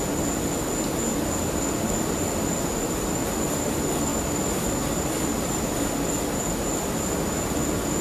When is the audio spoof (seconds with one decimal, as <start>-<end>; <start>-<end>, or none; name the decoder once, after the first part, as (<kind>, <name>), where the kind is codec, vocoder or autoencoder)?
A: 4.1-4.6 (vocoder, BigVGAN v2)